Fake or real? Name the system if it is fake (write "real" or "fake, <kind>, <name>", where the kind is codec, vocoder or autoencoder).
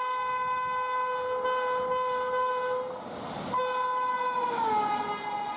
real